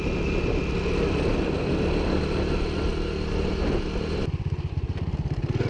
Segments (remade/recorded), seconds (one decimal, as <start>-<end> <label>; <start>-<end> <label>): 0.0-5.7 recorded